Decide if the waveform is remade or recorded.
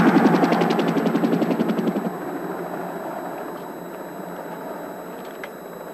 recorded